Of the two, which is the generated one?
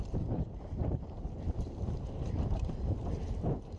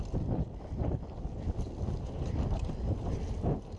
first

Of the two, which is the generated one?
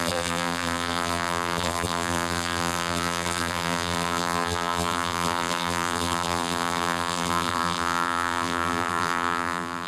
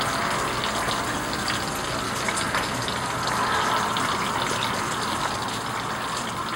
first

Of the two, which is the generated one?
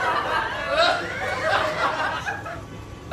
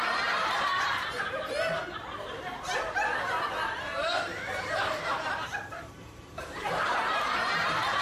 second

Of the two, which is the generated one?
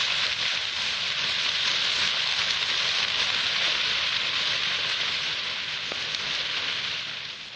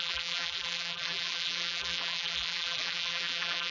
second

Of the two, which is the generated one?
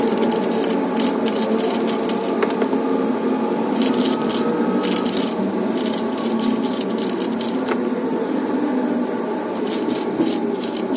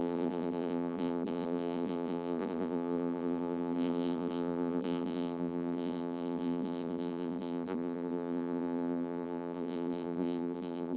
second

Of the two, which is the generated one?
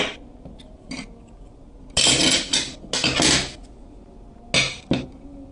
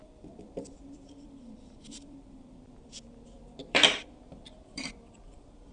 second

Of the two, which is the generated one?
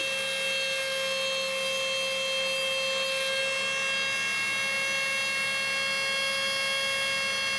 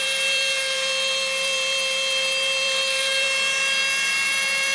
second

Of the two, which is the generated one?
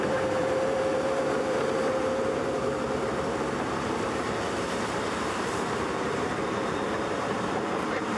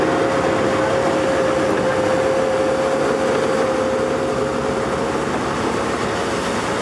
first